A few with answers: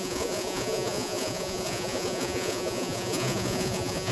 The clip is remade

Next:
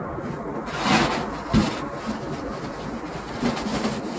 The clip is recorded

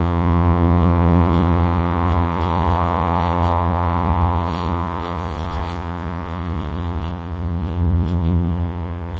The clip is remade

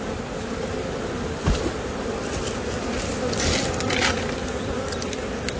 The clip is recorded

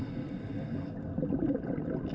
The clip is recorded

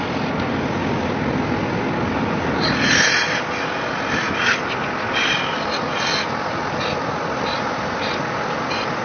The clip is recorded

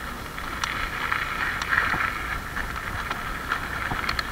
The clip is recorded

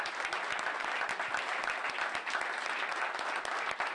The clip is recorded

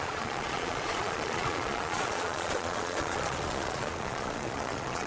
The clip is remade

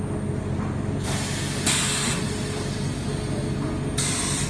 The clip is recorded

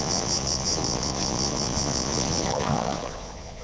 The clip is remade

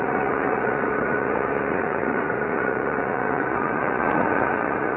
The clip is remade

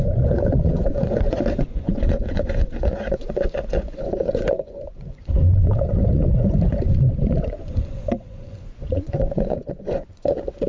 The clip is remade